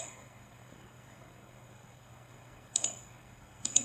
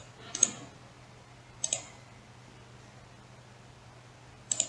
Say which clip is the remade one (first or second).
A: first